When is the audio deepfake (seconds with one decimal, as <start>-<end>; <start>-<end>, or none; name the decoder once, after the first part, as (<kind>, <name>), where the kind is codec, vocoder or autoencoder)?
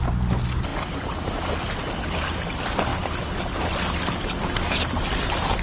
none